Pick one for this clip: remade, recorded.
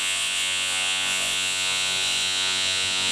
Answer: remade